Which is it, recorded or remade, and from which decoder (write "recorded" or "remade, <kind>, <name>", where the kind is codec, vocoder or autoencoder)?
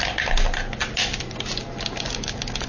recorded